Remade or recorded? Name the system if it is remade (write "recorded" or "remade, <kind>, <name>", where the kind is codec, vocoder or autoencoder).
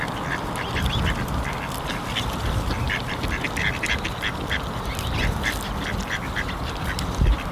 recorded